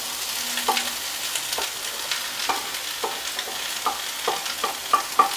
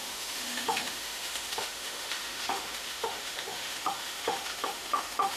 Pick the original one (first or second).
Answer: first